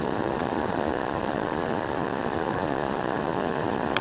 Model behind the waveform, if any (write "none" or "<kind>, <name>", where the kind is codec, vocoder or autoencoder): vocoder, Vocos